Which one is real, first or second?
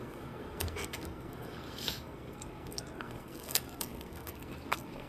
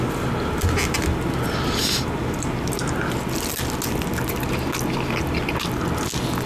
second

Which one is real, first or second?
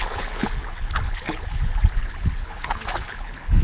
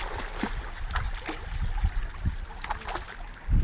second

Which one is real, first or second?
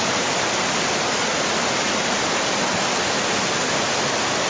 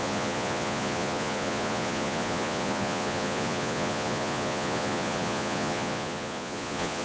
first